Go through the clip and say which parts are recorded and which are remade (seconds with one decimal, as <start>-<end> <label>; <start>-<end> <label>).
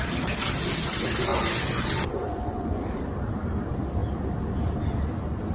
0.0-1.3 recorded; 1.3-2.8 remade; 2.8-5.5 recorded